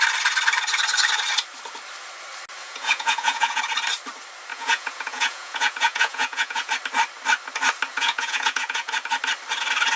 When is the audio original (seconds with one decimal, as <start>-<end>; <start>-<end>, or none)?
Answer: 0.0-2.6; 3.6-4.5; 6.7-7.9; 8.9-10.0